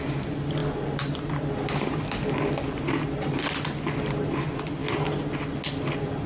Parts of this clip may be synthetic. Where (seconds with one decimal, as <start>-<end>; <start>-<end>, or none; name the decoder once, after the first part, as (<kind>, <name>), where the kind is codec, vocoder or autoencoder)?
none